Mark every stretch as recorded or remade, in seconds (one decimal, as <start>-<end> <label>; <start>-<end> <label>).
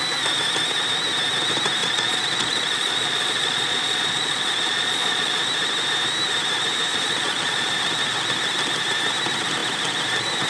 0.0-1.8 recorded; 1.8-5.4 remade; 5.4-6.9 recorded; 6.9-7.7 remade; 7.7-10.5 recorded